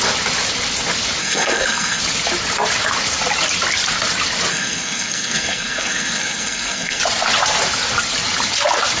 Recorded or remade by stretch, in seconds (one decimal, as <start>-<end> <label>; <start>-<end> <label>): 0.0-1.2 recorded; 1.2-2.0 remade; 2.0-4.5 recorded; 4.5-7.0 remade; 7.0-9.0 recorded